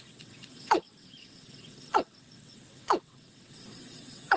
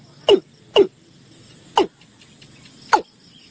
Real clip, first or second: second